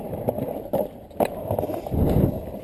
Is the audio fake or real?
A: real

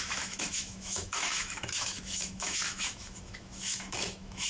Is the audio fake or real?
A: fake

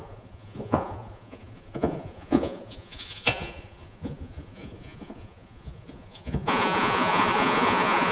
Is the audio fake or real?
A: fake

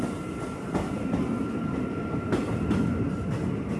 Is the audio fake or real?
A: real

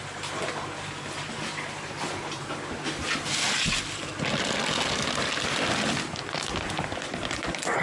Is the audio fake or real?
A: real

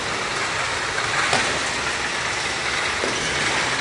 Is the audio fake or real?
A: real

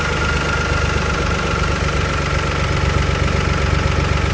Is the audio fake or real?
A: real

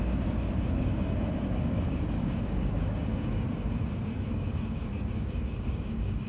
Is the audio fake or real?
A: fake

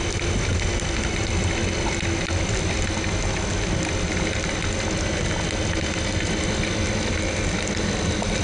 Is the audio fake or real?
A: real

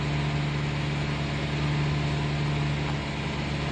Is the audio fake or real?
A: real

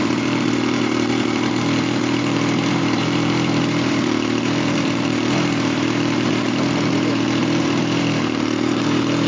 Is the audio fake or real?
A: fake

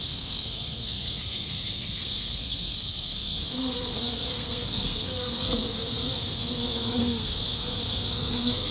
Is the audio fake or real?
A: fake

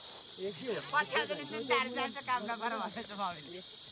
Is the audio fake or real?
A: real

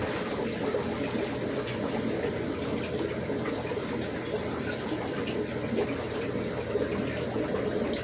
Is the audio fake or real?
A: real